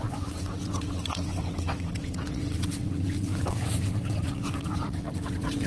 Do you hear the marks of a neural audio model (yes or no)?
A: yes